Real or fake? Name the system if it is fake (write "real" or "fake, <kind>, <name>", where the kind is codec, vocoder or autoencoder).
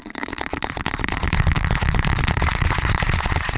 fake, vocoder, Vocos